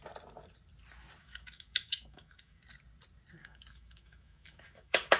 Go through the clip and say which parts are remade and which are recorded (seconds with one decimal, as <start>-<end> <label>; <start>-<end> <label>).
0.0-1.2 recorded; 1.2-2.6 remade; 2.6-3.4 recorded; 3.4-5.2 remade